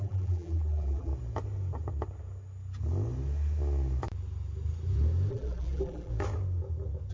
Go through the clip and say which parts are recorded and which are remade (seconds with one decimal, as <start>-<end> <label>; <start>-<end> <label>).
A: 0.0-1.1 remade; 1.1-5.3 recorded; 5.3-6.1 remade; 6.1-7.1 recorded